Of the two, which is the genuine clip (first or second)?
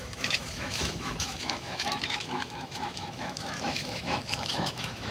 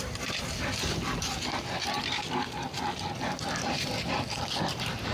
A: second